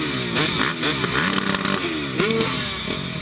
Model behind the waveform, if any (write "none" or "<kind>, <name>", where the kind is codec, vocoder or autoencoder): none